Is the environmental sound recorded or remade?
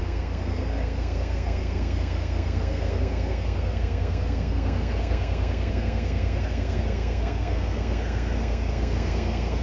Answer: remade